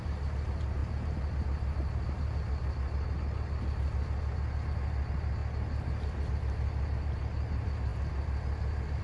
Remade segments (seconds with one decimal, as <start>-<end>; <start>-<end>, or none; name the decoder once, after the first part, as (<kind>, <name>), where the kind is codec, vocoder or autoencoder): none